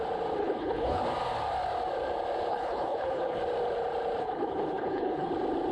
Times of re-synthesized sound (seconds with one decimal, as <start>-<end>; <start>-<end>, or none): 0.4-1.0; 2.5-3.4; 4.2-5.3